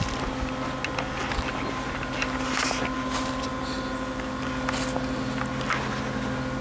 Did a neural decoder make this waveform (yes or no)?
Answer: no